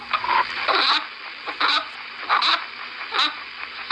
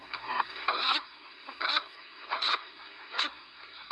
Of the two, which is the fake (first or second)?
second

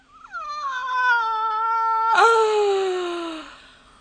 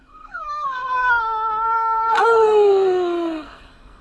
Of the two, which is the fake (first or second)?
second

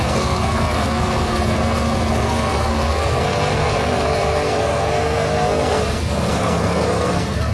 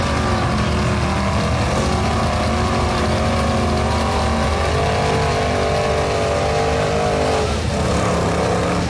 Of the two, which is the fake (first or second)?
first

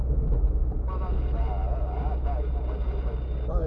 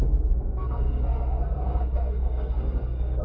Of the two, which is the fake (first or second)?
second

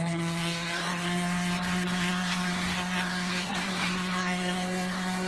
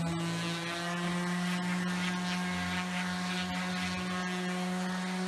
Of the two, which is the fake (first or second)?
first